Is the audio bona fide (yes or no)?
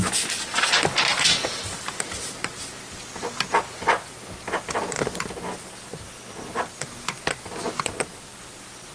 yes